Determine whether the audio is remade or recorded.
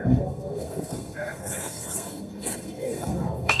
remade